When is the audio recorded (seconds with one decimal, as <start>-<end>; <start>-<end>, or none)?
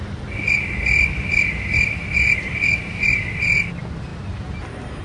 0.0-5.0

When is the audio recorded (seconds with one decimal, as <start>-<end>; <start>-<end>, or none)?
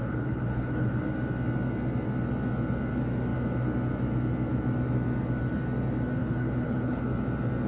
1.0-6.2; 7.0-7.7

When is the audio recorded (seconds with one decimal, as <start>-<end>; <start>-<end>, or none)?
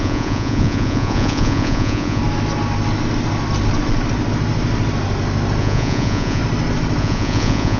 2.2-5.6; 6.4-7.0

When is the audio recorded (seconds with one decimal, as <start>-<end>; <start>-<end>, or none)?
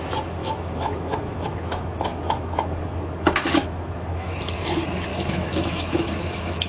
0.0-0.4; 4.4-5.1